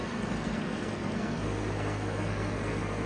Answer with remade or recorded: remade